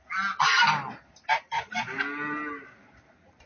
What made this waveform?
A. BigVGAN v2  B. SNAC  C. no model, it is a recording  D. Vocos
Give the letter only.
C